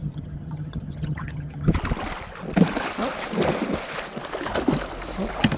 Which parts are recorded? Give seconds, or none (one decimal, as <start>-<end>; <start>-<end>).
1.7-5.6